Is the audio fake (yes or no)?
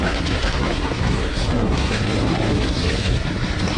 yes